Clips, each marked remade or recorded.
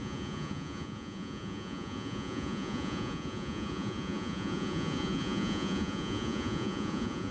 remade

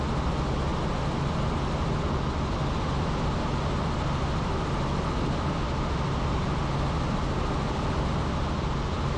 recorded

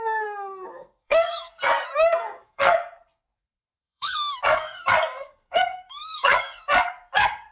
remade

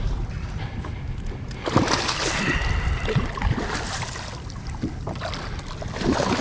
recorded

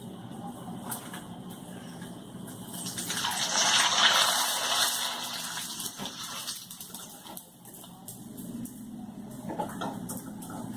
recorded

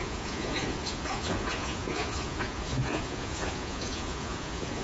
remade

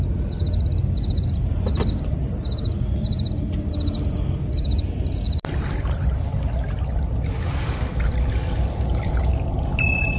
recorded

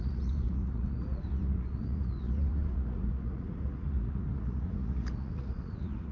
remade